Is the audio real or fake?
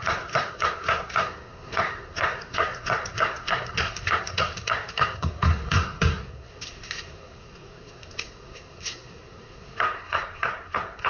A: fake